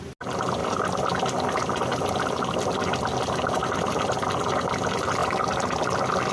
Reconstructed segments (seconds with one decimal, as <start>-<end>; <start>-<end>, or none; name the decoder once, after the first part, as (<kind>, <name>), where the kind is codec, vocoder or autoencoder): none